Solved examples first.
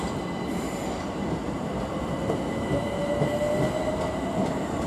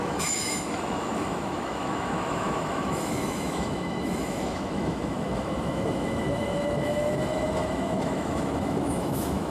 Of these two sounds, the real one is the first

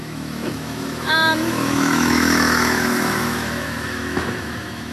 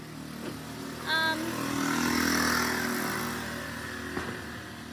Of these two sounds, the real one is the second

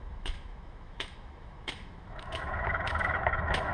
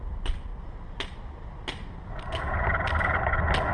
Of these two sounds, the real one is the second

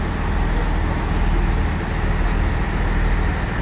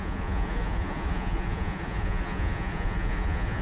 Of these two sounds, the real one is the first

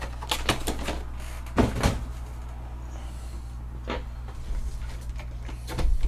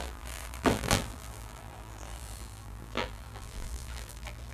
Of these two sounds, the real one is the first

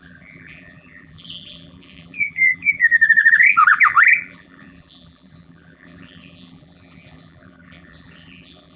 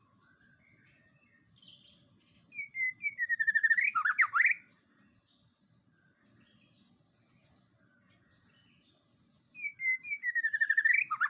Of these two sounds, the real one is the second